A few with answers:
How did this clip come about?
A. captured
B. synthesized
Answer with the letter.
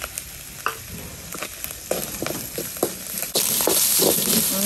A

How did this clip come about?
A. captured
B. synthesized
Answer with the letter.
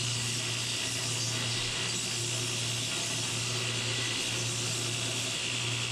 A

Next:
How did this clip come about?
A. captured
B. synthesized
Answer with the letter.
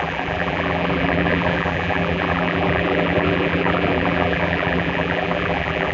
B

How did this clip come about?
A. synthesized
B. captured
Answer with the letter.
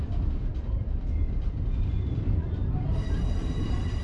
A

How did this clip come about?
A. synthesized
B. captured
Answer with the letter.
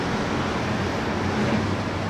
B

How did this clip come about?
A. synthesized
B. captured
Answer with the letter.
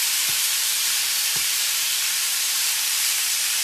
A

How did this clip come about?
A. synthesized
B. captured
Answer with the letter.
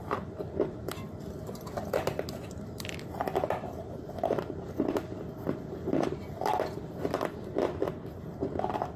A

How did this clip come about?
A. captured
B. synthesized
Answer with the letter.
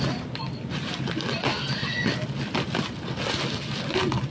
A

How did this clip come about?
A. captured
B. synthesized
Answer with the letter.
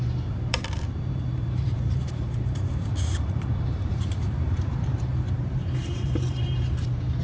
B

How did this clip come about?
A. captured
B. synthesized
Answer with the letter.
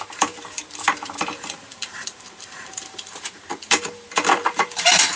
B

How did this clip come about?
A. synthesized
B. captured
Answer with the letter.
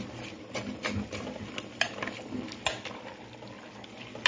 B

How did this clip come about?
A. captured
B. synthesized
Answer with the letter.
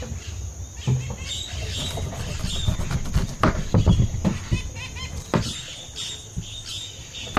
A